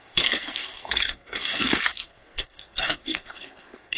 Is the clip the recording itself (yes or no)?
no